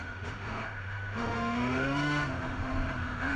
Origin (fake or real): fake